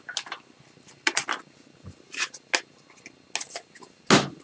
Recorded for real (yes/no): yes